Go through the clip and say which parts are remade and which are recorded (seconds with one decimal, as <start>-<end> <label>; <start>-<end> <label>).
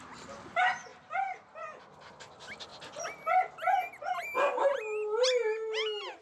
0.0-6.2 recorded